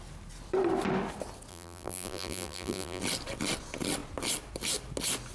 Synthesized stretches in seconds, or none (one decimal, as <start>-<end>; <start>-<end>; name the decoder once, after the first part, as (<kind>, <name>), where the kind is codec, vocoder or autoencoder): 1.5-3.0 (vocoder, BigVGAN v2)